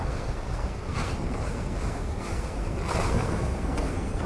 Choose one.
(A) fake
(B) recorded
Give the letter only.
A